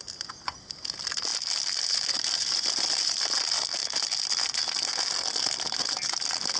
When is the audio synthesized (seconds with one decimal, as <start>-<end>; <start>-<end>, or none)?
none